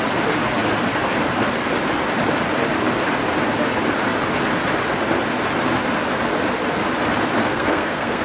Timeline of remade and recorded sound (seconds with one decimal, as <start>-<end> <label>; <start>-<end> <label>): 0.0-7.4 recorded; 7.4-8.2 remade